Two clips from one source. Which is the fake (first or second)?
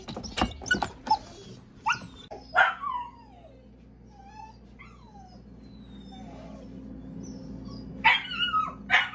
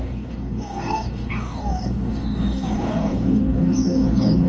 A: second